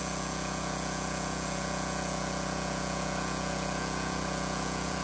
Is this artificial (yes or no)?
yes